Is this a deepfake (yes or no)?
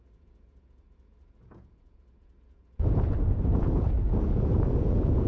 yes